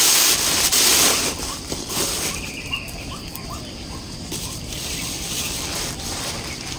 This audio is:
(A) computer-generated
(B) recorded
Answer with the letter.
A